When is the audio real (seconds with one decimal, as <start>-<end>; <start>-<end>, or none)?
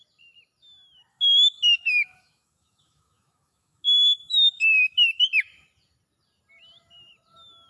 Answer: 0.0-1.1; 5.2-7.7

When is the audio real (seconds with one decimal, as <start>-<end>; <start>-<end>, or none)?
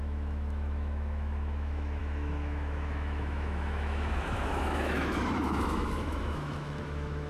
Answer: none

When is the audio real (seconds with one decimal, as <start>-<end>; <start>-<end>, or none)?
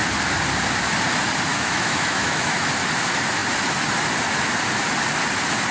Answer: 0.0-1.5; 2.7-5.7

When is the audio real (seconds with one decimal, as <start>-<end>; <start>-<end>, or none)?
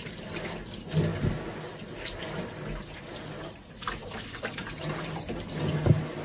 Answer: 0.0-6.2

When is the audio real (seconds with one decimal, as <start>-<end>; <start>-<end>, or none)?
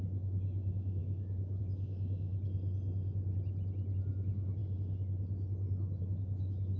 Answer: 2.3-4.1; 4.6-6.0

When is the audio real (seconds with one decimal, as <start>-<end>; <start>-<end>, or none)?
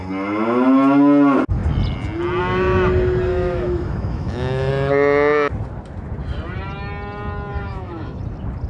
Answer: 0.0-3.3; 4.7-7.5; 8.2-8.7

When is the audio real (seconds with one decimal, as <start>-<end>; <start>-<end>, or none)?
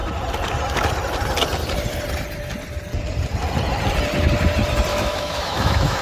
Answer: 0.0-4.9